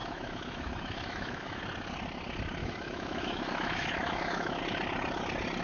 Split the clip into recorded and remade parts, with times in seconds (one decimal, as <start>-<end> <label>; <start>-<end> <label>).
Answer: 0.0-1.6 remade; 1.6-2.6 recorded; 2.6-4.6 remade; 4.6-5.6 recorded